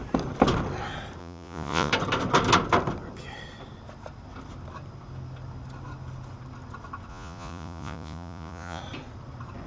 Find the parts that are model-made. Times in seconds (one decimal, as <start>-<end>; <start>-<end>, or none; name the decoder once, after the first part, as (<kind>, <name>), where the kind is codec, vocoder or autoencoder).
1.2-1.9 (vocoder, Vocos); 7.1-8.8